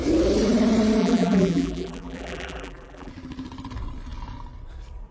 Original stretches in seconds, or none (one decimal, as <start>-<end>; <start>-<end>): 0.0-1.0; 3.1-5.1